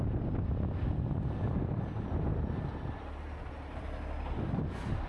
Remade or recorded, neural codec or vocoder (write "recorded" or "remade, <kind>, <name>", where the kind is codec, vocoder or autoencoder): recorded